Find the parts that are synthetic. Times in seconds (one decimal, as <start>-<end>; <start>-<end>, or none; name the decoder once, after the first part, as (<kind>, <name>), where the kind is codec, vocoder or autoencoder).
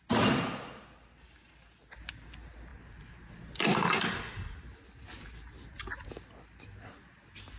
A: none